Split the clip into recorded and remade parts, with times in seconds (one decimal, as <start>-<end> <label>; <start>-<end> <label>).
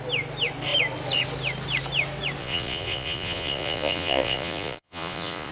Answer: 0.0-2.4 recorded; 2.4-5.5 remade